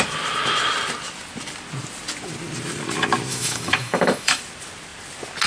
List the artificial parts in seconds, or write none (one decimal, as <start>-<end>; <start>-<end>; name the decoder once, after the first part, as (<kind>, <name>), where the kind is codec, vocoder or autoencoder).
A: 3.3-4.4 (autoencoder, DAC-VAE)